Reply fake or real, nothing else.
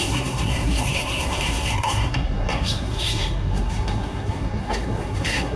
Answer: fake